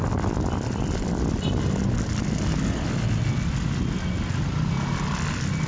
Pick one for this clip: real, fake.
real